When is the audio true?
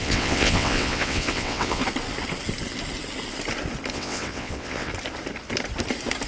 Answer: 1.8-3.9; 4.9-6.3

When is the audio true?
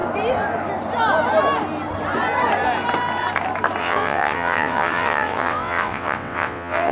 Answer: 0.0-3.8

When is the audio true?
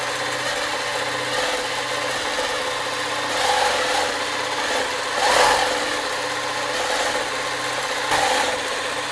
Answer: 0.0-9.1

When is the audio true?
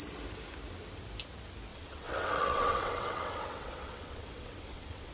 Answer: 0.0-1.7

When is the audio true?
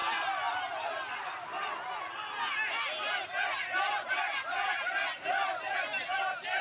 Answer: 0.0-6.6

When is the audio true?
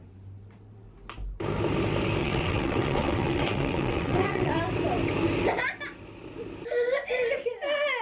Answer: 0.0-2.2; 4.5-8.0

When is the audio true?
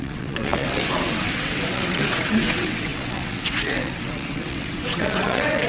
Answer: none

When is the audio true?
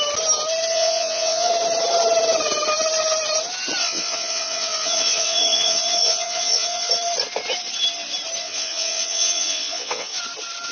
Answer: 0.0-0.7; 1.5-3.8; 6.9-8.4; 10.2-10.7